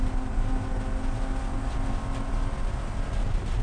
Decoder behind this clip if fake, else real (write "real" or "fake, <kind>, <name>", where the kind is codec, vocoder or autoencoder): real